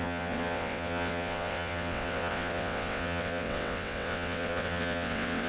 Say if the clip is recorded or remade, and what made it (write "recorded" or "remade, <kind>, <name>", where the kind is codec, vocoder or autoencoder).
remade, vocoder, WaveNeXt